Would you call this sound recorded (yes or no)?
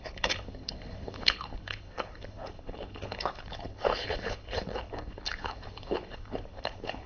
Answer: no